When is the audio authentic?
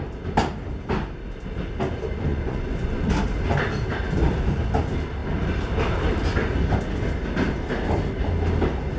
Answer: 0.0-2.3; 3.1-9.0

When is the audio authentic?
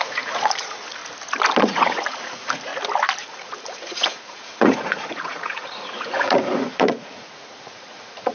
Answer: 1.0-1.6; 2.7-3.2